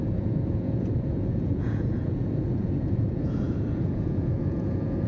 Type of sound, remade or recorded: remade